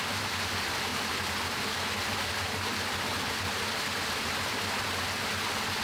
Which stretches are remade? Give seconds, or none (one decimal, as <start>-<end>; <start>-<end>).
none